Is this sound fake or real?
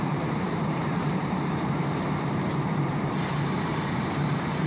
fake